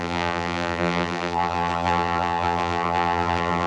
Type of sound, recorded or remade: remade